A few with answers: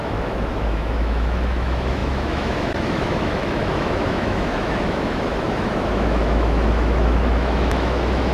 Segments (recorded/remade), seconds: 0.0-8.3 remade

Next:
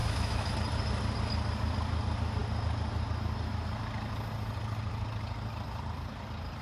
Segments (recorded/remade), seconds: 0.0-0.5 remade; 0.5-6.6 recorded

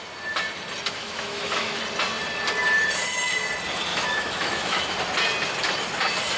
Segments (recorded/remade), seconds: 0.0-1.0 recorded; 1.0-1.8 remade; 1.8-3.9 recorded; 3.9-4.8 remade; 4.8-6.4 recorded

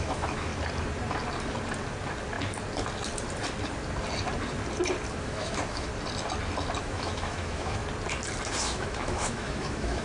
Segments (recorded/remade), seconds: 0.0-0.5 remade; 0.5-5.2 recorded; 5.2-5.9 remade; 5.9-6.8 recorded; 6.8-7.8 remade; 7.8-8.6 recorded; 8.6-10.0 remade

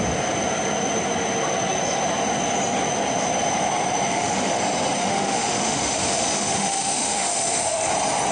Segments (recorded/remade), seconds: 0.0-4.1 recorded; 4.1-4.6 remade; 4.6-5.0 recorded; 5.0-7.9 remade; 7.9-8.3 recorded

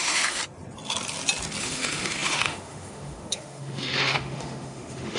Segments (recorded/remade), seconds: 0.0-0.4 remade; 0.4-1.6 recorded; 1.6-5.2 remade

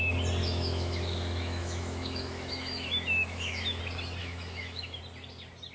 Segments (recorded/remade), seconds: 0.0-0.4 recorded; 0.4-3.8 remade; 3.8-4.2 recorded; 4.2-5.0 remade; 5.0-5.7 recorded